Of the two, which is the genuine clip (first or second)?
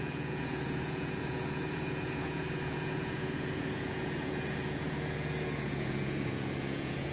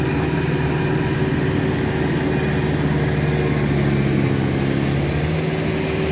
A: second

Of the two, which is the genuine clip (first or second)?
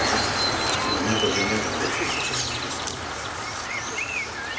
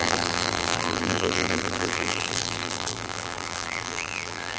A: first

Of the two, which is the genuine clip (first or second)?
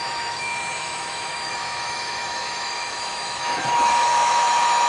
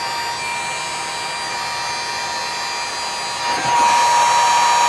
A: second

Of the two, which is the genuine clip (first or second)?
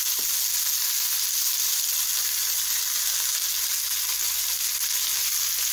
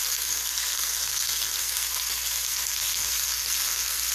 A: first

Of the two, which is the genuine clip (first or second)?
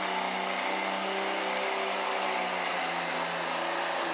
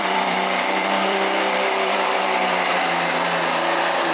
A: first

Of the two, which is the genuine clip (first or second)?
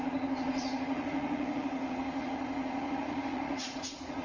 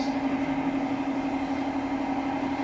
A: second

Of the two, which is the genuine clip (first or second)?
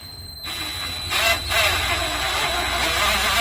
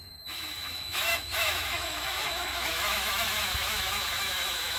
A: first